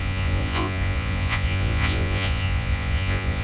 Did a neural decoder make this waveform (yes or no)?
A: yes